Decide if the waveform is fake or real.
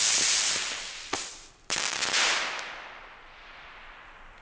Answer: fake